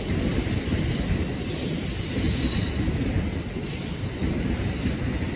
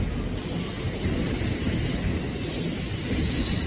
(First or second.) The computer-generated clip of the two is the first